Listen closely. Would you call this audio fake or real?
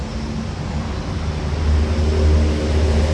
real